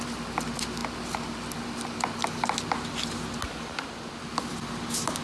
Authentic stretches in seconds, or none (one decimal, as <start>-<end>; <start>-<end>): 0.0-5.2